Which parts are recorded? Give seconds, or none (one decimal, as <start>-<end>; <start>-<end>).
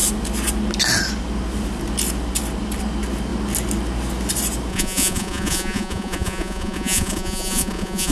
0.0-4.7